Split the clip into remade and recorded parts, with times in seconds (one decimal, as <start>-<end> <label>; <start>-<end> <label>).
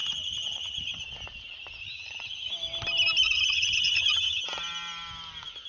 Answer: 0.0-1.0 remade; 1.0-1.8 recorded; 1.8-2.5 remade; 2.5-3.2 recorded; 3.2-4.4 remade; 4.4-5.7 recorded